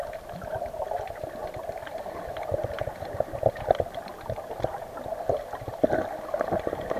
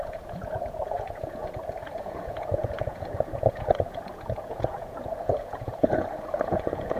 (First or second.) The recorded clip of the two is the first